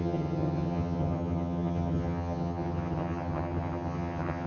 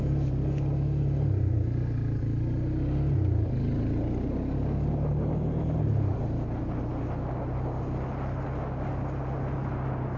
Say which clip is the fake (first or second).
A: first